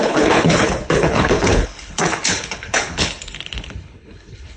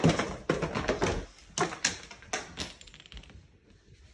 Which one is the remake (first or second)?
first